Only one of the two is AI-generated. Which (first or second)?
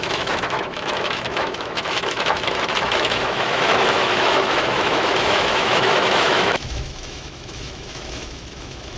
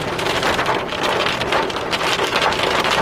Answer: first